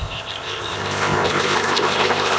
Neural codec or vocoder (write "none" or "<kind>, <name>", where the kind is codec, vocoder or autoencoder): codec, ZipCodec